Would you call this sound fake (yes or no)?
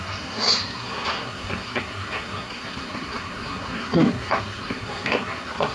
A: yes